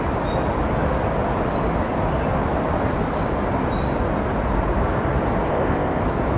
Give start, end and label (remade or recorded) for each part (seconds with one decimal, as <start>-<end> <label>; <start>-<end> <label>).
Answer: 0.0-5.5 recorded; 5.5-6.0 remade; 6.0-6.4 recorded